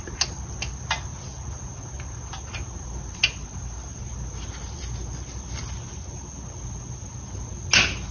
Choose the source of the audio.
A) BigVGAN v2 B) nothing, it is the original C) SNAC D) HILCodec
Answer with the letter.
B